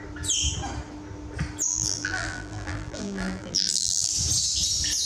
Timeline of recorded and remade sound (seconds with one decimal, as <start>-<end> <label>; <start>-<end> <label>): 0.0-1.7 recorded; 1.7-4.1 remade; 4.1-5.1 recorded